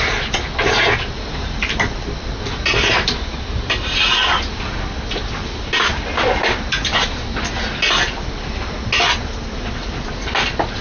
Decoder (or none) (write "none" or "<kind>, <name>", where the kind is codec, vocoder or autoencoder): none